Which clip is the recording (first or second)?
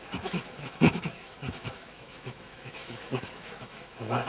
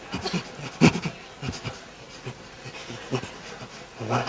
second